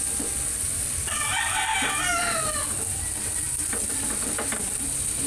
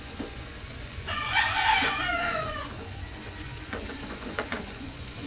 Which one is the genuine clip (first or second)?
first